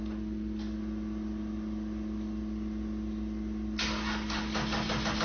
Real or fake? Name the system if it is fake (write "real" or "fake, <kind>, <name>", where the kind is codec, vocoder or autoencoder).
real